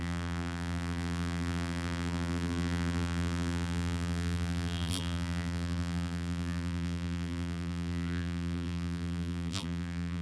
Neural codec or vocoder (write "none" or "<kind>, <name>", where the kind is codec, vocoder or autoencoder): vocoder, BigVGAN v2